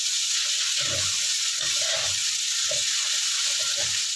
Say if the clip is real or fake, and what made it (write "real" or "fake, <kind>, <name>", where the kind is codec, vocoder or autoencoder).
fake, vocoder, Vocos